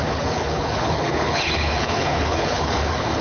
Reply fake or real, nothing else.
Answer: fake